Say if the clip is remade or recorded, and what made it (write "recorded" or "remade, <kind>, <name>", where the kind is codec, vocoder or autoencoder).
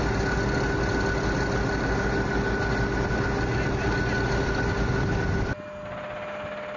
recorded